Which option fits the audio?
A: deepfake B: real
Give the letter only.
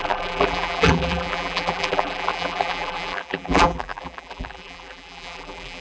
A